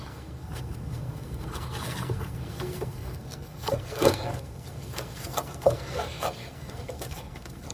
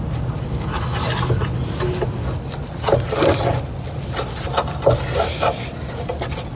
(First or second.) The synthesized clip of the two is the first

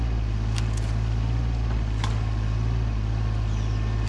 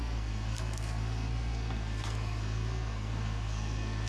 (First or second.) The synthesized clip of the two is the second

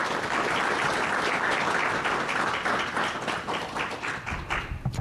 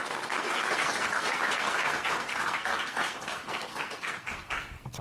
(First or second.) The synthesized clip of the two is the second